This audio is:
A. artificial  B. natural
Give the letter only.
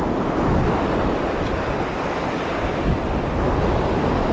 B